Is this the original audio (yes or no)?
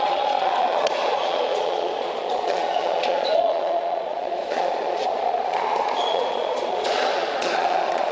no